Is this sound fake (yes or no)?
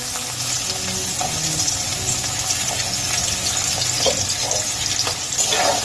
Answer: no